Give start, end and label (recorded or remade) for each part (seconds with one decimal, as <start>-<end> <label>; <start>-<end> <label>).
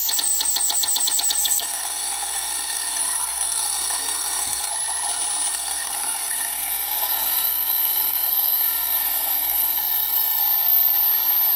0.0-1.4 recorded; 1.4-4.7 remade; 4.7-5.5 recorded; 5.5-10.4 remade; 10.4-11.6 recorded